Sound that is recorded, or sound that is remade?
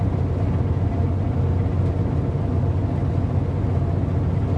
recorded